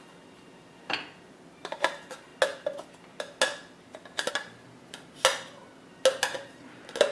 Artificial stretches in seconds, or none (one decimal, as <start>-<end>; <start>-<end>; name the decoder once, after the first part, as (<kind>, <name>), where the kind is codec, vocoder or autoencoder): none